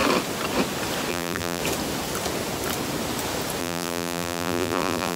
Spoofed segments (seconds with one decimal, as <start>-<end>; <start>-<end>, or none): 1.1-1.6; 3.6-5.2